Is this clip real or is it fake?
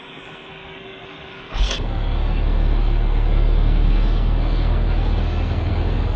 fake